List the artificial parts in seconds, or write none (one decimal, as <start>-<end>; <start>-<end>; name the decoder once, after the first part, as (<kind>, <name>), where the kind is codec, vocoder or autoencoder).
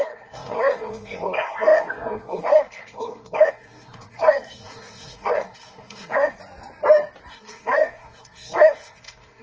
0.0-6.4 (codec, SNAC); 7.3-9.4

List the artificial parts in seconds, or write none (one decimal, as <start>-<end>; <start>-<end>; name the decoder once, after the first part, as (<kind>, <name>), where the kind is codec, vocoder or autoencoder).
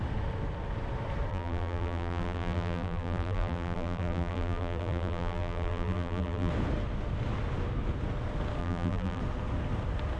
1.3-6.5 (vocoder, BigVGAN v2); 8.6-9.2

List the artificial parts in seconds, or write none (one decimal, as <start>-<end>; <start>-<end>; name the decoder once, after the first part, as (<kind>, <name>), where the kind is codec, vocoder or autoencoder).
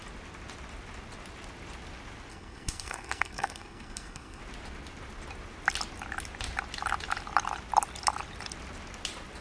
2.3-4.4 (codec, SNAC)